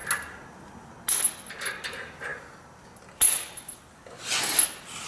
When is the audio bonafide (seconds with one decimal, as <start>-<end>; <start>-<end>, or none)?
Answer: 0.0-5.1